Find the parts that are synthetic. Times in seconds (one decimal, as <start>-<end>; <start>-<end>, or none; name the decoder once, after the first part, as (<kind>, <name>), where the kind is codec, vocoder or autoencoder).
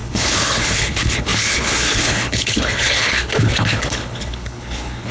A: 0.0-5.1 (codec, HILCodec)